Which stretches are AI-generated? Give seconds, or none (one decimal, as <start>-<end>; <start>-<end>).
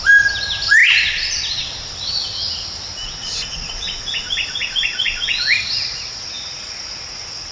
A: 3.0-7.0